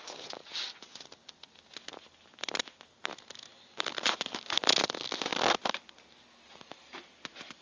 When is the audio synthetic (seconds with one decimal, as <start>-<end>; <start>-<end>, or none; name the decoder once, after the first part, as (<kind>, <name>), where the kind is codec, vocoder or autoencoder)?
none